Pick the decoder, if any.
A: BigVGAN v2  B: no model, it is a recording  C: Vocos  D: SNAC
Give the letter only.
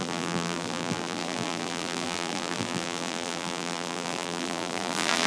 A